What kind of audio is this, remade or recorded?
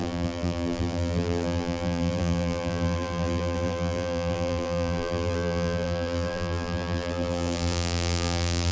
remade